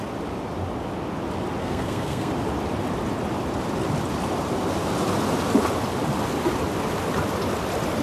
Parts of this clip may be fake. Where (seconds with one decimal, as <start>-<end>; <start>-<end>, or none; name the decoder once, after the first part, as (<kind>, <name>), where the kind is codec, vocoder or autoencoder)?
1.6-2.3 (codec, SNAC)